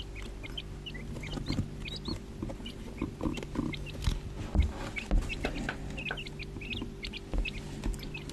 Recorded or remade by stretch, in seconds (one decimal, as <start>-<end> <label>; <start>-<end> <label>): 0.0-8.3 recorded